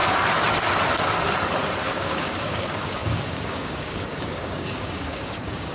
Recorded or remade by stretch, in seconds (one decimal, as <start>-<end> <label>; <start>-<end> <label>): 0.0-1.8 recorded; 1.8-5.7 remade